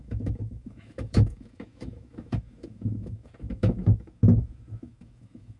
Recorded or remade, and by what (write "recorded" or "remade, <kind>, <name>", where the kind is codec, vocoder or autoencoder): remade, autoencoder, DAC-VAE